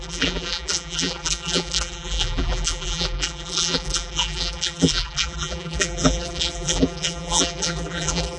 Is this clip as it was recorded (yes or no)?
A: no